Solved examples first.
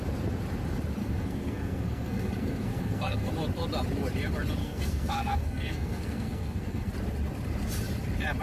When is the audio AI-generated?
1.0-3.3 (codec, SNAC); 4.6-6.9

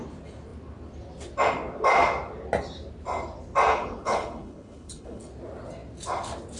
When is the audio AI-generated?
3.7-5.3 (codec, HILCodec)

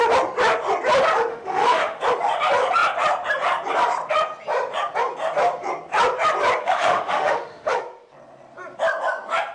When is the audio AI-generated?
1.3-2.0 (autoencoder, DAC-VAE); 6.6-7.8

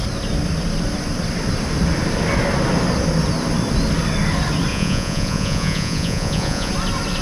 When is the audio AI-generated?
4.7-6.7 (vocoder, Vocos)

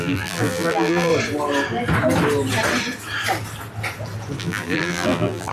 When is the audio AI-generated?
0.0-1.1 (vocoder, BigVGAN v2); 4.4-5.5

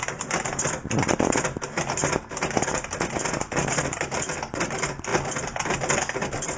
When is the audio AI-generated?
none

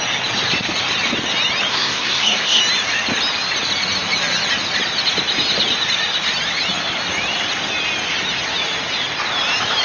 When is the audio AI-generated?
1.7-2.6 (codec, SNAC)